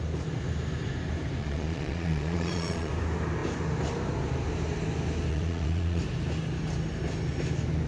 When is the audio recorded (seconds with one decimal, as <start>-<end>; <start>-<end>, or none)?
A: 0.0-1.4; 2.9-5.3; 6.0-7.9